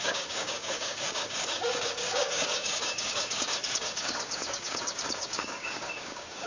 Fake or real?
fake